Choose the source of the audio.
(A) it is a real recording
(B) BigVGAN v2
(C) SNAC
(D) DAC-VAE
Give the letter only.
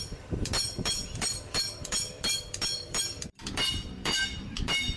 B